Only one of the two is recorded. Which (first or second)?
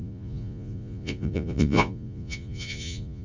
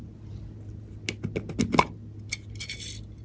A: second